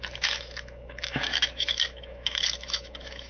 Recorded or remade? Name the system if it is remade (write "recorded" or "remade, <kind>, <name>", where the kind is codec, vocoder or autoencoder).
remade, autoencoder, DAC-VAE